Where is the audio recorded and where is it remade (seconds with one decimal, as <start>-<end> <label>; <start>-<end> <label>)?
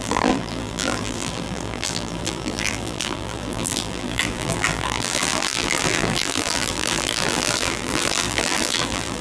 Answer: 0.0-9.2 remade